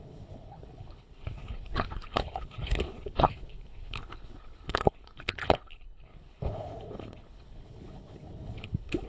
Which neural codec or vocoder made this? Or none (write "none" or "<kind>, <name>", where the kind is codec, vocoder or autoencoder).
codec, HILCodec